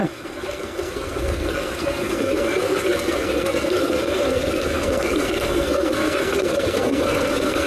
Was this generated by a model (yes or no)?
yes